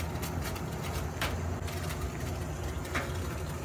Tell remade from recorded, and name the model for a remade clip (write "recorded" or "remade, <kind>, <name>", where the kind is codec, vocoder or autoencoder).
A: recorded